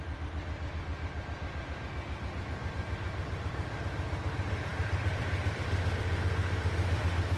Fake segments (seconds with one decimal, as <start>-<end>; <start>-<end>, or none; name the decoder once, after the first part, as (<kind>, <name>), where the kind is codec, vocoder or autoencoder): 0.0-7.4 (vocoder, BigVGAN v2)